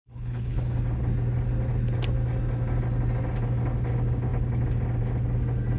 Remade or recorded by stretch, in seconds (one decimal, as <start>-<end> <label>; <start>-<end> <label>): 0.0-0.6 remade; 0.6-5.8 recorded